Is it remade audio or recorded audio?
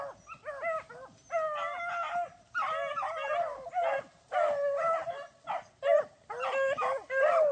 recorded